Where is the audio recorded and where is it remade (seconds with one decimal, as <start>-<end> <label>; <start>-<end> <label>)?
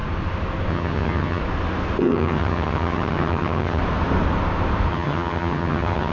0.0-0.7 recorded; 0.7-1.4 remade; 1.4-2.0 recorded; 2.0-3.8 remade; 3.8-4.9 recorded; 4.9-6.1 remade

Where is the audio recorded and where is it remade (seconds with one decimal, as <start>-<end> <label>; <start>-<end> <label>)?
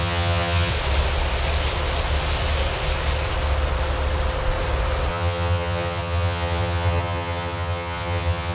0.0-0.7 remade; 0.7-5.1 recorded; 5.1-8.5 remade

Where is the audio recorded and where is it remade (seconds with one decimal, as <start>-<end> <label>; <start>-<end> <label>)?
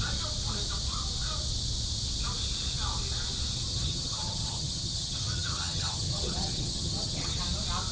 0.0-3.7 recorded; 3.7-7.4 remade; 7.4-7.9 recorded